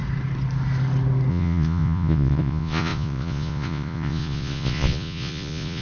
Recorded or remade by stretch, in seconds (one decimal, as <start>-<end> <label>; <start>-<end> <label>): 0.0-1.3 recorded; 1.3-5.8 remade